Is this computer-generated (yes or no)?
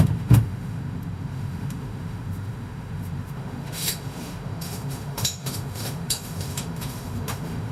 yes